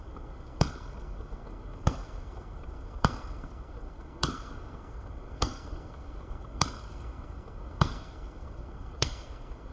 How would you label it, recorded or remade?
remade